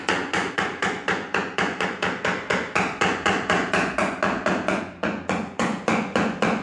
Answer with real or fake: fake